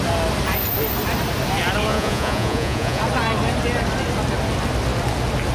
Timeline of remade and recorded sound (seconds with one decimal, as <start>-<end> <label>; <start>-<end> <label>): 0.0-1.9 recorded; 1.9-3.0 remade; 3.0-5.5 recorded